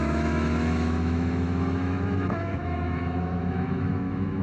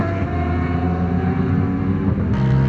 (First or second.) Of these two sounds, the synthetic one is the first